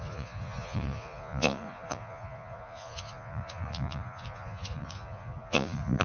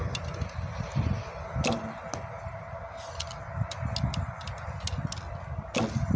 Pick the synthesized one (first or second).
first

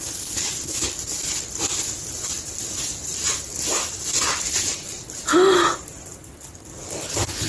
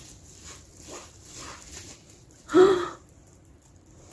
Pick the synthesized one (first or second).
second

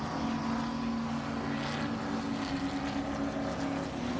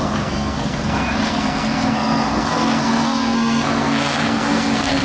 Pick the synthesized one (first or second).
second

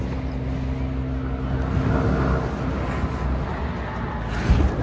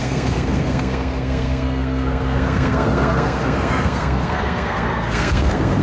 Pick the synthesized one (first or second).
second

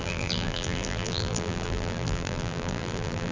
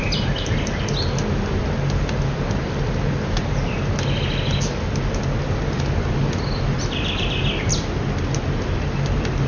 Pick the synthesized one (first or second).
first